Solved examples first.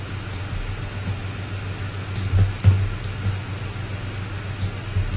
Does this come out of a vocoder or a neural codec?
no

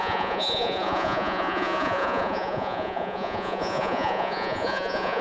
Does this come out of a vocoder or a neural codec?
yes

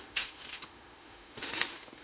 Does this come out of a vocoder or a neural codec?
yes